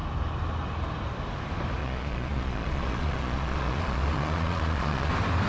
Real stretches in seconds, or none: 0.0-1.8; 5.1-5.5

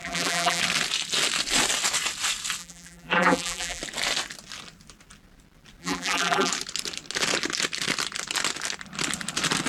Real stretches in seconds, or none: 0.6-2.6; 3.8-5.8; 6.5-9.7

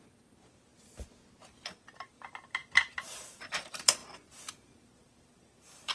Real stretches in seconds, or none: 0.7-1.5